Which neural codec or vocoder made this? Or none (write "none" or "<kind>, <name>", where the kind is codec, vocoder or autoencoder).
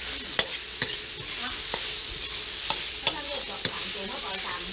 none